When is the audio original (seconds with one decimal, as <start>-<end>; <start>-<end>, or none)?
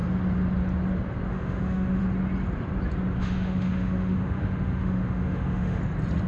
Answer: 0.0-1.3; 2.0-3.2; 5.8-6.3